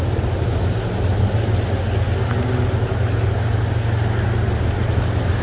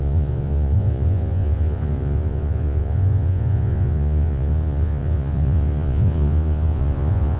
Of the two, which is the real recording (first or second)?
first